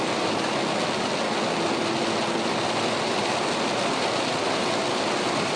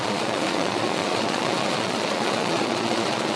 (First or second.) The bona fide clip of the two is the first